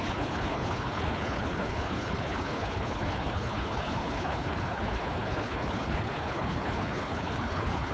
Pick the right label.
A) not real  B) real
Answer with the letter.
A